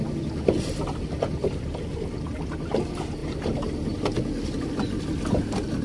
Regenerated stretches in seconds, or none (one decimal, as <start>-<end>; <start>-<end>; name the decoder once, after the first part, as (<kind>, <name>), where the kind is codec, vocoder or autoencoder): 1.4-2.7 (vocoder, BigVGAN v2); 3.2-4.1